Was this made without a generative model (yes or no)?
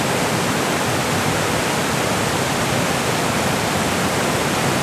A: yes